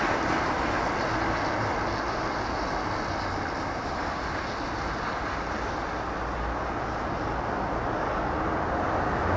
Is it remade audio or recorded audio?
recorded